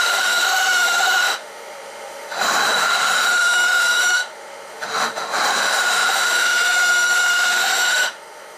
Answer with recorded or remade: remade